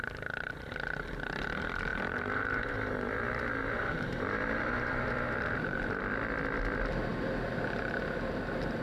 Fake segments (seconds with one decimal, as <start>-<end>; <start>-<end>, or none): 1.9-6.0